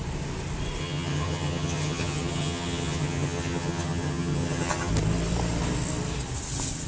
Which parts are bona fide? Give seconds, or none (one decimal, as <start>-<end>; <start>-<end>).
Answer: 0.0-0.8; 4.9-6.9